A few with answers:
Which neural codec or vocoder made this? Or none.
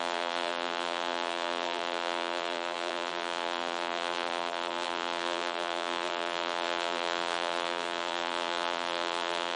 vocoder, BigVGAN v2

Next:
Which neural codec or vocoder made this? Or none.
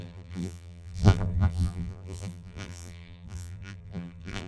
vocoder, BigVGAN v2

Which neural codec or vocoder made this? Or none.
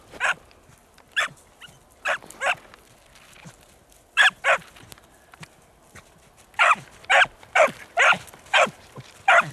none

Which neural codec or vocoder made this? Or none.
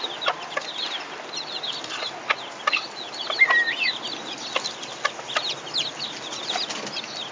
none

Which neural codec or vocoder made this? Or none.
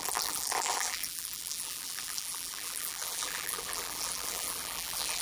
vocoder, BigVGAN v2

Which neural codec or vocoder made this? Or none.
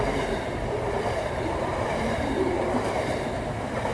vocoder, BigVGAN v2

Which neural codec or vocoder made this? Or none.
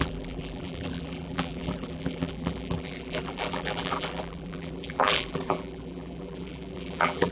vocoder, BigVGAN v2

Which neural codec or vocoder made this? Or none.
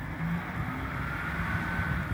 none